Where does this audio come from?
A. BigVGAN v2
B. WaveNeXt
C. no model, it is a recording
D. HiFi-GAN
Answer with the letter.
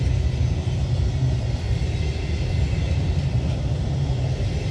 C